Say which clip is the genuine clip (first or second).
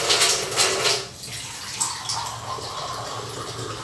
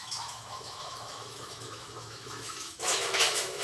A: first